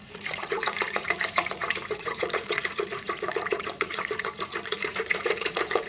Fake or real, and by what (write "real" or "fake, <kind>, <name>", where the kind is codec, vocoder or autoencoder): fake, vocoder, Vocos